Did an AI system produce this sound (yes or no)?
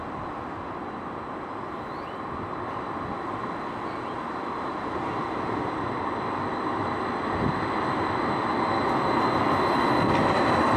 no